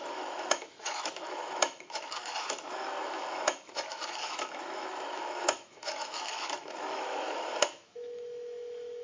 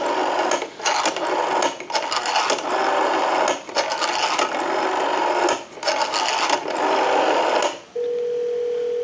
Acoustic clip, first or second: second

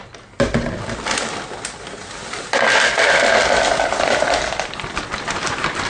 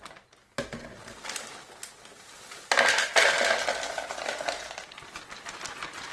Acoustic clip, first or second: second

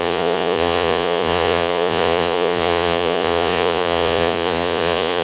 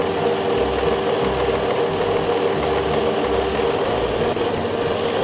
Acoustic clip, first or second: second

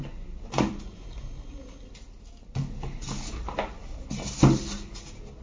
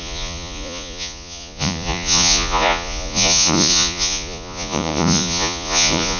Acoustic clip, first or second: first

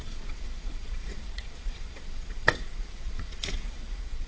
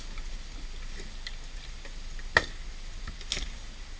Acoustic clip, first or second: second